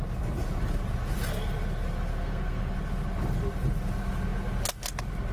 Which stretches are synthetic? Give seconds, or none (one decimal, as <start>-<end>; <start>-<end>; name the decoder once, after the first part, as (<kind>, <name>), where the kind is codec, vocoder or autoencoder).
2.1-2.7 (codec, SNAC)